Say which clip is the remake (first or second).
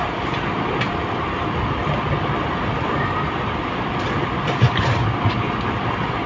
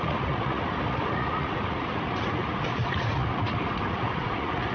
second